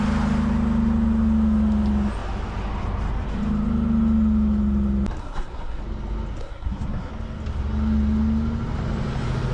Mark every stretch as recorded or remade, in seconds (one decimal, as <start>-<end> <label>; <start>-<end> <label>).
0.0-5.2 recorded; 5.2-5.8 remade; 5.8-6.4 recorded; 6.4-7.1 remade; 7.1-9.5 recorded